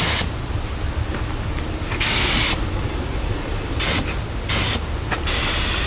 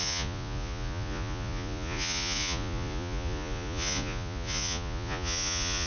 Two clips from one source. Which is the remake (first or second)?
second